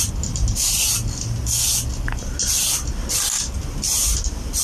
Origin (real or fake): real